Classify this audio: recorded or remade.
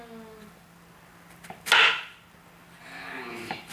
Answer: recorded